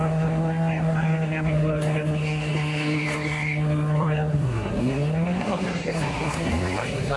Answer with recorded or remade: remade